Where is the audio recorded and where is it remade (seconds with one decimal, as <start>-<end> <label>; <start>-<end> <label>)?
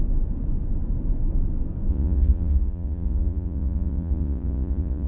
0.0-1.9 recorded; 1.9-5.1 remade